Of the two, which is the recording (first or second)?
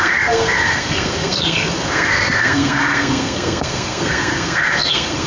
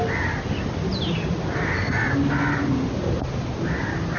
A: second